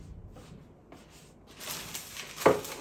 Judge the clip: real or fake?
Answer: real